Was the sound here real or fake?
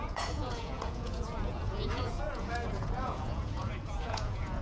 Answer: fake